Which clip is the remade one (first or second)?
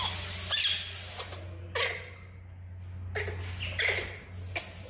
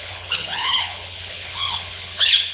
second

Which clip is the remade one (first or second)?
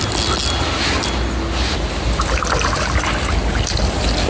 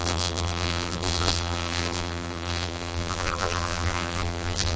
second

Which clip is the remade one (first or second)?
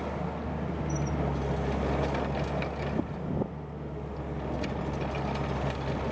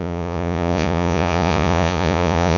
second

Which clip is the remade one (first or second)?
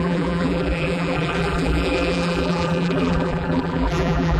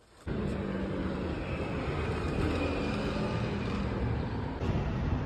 first